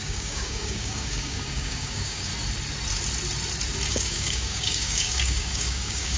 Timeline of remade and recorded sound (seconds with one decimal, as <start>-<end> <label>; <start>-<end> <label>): 0.0-2.3 remade; 2.3-3.9 recorded; 3.9-6.2 remade